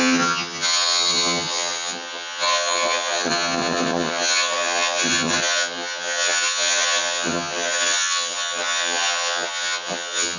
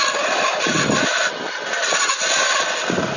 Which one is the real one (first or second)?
second